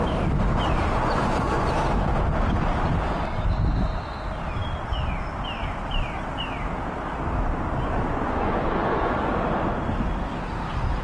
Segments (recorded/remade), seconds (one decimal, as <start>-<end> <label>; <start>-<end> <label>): 0.0-1.0 recorded; 1.0-1.7 remade; 1.7-7.8 recorded; 7.8-9.3 remade; 9.3-11.0 recorded